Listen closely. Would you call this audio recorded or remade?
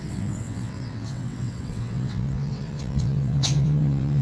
remade